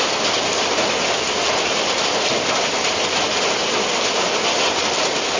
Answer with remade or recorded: recorded